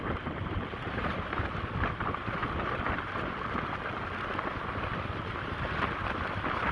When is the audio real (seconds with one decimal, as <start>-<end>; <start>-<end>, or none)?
2.4-4.8